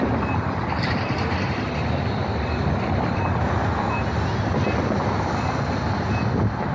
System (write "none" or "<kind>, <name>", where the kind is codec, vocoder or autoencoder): none